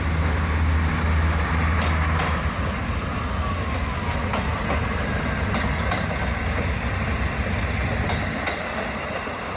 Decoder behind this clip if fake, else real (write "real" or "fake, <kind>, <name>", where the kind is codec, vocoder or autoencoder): real